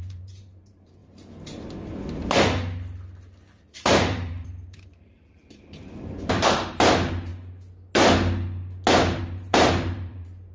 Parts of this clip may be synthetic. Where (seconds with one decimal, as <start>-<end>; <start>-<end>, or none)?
0.0-1.0; 3.5-7.3; 9.2-10.5